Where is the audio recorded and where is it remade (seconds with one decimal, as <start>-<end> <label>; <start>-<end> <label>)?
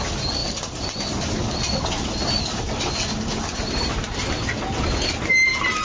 0.0-5.8 recorded